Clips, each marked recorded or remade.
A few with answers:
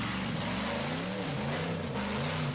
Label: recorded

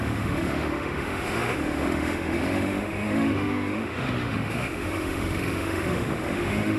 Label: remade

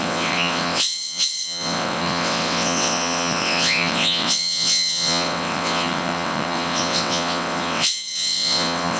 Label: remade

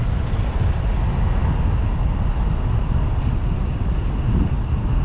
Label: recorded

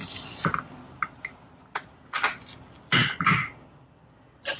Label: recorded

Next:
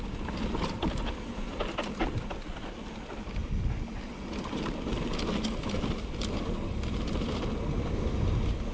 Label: recorded